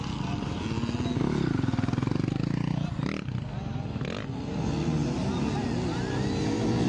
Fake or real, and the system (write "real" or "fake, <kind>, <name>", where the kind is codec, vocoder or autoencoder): real